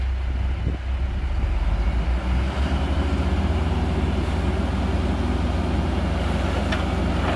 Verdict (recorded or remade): recorded